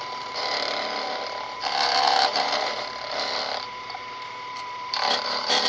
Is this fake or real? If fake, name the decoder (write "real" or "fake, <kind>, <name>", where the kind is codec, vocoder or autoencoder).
fake, vocoder, BigVGAN v2